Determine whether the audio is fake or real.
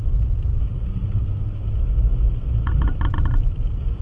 real